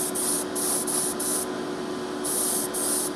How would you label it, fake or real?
real